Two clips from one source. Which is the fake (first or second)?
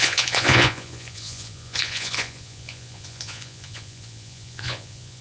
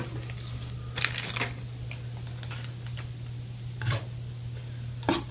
first